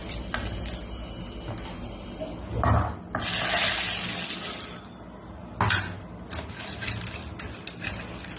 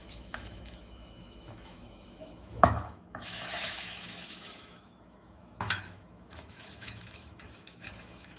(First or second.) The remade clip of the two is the second